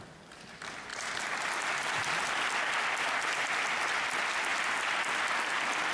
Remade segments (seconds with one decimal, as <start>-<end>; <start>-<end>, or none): none